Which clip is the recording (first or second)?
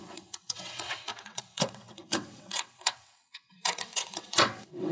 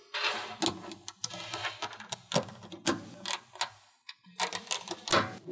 second